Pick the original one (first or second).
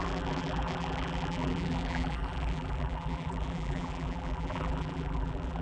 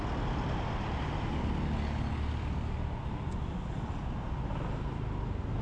second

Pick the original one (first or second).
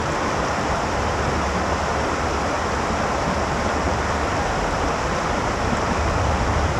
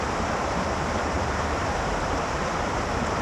first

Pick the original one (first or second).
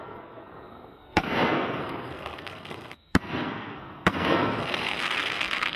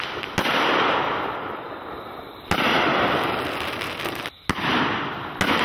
second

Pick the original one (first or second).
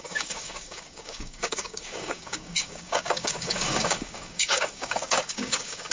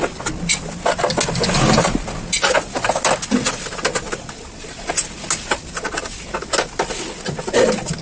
second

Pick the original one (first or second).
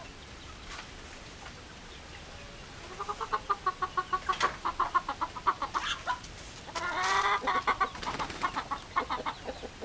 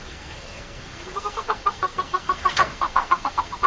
first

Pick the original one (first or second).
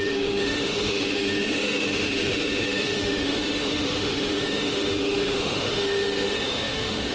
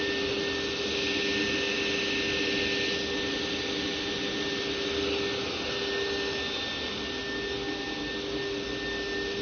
second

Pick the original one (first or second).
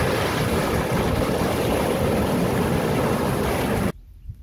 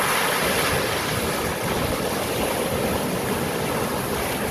first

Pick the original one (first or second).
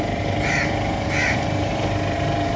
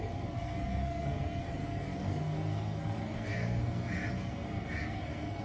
first